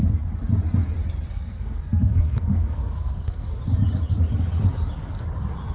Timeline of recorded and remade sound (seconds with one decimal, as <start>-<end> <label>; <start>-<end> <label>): 0.0-1.3 recorded; 1.3-3.5 remade; 3.5-5.7 recorded